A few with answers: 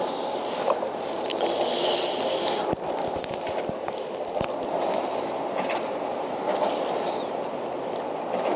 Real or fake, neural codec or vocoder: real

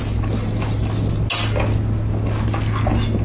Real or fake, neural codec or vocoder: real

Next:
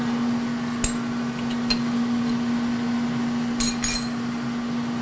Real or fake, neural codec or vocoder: real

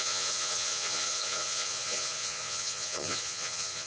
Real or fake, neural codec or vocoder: fake, vocoder, Vocos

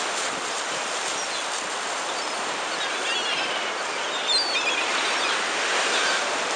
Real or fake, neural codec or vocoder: real